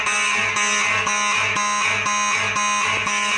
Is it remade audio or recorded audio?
recorded